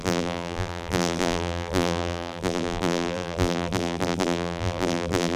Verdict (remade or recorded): remade